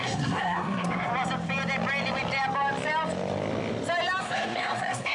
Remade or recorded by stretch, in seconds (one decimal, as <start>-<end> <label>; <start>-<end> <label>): 0.0-1.1 remade; 1.1-4.2 recorded; 4.2-5.1 remade